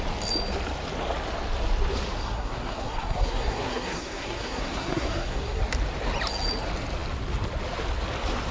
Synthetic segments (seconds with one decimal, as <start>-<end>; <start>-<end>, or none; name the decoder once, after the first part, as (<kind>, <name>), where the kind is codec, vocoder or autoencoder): 2.2-5.6 (codec, SNAC)